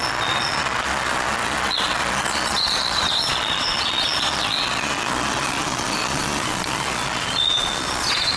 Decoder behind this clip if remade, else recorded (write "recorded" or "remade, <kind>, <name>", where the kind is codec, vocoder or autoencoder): remade, vocoder, Vocos